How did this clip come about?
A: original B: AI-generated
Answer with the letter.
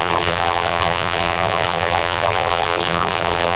B